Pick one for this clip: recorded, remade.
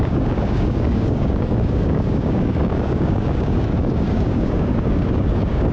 remade